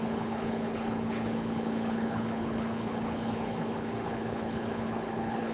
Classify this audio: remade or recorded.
remade